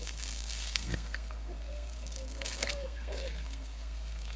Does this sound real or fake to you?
fake